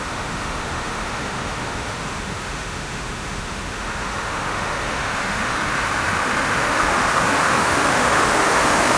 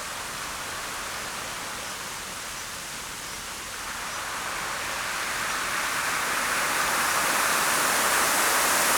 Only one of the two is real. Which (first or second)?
second